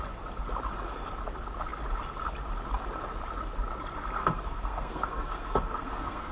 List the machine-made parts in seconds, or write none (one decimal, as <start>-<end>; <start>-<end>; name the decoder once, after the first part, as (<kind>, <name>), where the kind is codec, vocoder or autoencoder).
4.2-6.3 (codec, SNAC)